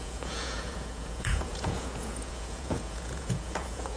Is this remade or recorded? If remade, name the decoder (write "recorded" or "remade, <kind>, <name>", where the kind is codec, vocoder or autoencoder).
remade, vocoder, Vocos